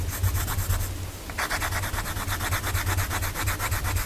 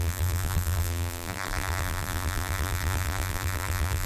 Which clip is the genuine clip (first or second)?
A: first